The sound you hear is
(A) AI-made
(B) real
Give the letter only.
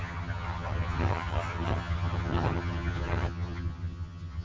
A